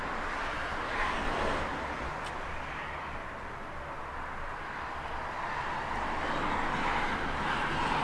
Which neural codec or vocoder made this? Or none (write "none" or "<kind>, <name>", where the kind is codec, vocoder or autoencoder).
none